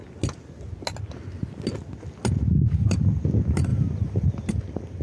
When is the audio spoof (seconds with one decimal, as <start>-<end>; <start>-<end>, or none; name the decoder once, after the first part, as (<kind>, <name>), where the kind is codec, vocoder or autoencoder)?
none